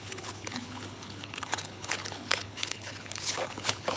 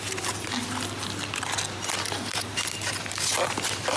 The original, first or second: second